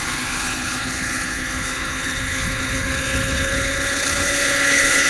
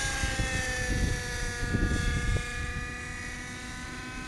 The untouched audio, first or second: second